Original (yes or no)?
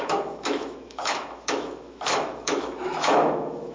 no